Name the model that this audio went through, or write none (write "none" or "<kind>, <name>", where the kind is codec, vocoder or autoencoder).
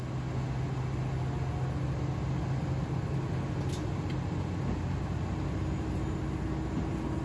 none